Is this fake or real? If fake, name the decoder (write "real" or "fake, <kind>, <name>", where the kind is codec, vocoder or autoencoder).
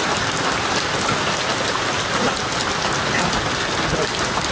real